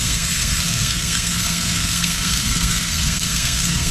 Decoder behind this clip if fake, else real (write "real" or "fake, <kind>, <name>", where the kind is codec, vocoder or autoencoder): fake, codec, SNAC